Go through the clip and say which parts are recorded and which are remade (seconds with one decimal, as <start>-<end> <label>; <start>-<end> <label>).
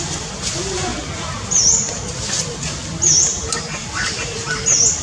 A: 0.0-5.0 recorded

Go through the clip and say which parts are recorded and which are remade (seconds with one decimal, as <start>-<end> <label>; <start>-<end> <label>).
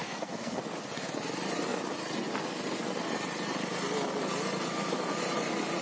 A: 0.0-0.6 remade; 0.6-5.8 recorded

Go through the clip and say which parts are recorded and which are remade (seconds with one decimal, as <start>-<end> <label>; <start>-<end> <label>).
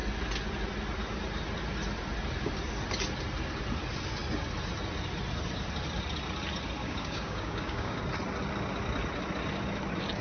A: 0.0-6.8 recorded; 6.8-8.0 remade; 8.0-10.2 recorded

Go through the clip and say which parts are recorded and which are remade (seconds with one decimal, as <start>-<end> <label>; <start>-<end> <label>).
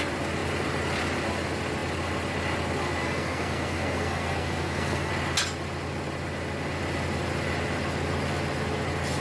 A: 0.0-3.0 recorded; 3.0-5.1 remade; 5.1-9.2 recorded